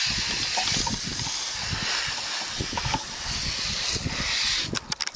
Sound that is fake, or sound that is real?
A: real